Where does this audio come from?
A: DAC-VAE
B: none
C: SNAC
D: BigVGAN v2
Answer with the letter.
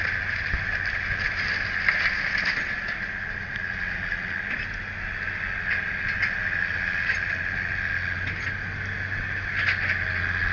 B